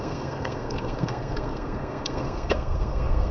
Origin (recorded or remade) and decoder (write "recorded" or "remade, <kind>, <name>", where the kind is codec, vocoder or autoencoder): remade, codec, SNAC